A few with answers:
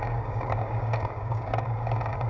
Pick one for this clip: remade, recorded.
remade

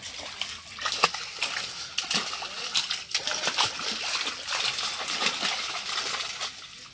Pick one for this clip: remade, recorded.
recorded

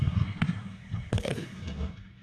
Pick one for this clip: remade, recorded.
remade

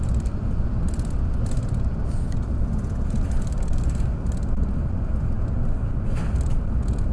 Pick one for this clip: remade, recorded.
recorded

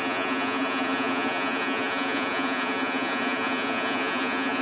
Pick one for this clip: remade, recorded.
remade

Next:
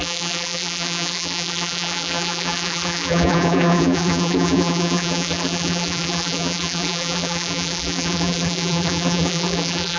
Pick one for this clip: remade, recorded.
remade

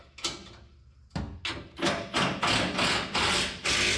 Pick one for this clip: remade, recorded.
recorded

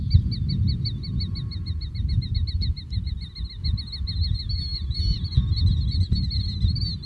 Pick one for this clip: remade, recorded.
recorded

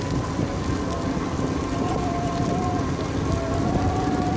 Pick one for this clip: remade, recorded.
recorded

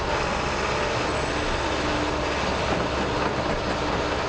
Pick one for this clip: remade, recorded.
recorded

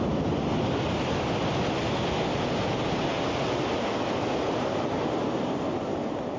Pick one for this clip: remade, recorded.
recorded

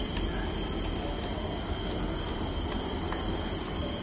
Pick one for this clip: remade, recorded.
recorded